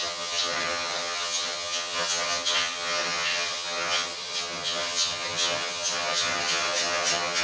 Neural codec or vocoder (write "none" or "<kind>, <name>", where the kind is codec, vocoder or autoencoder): vocoder, HiFi-GAN